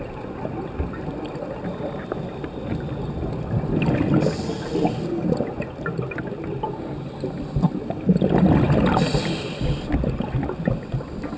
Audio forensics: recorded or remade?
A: recorded